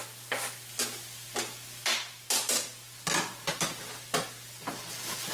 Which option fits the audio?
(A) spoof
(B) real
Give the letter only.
B